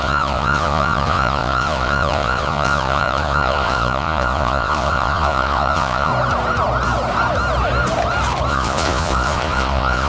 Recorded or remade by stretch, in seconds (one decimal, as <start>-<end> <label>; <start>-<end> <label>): 0.0-6.1 remade; 6.1-8.5 recorded; 8.5-10.1 remade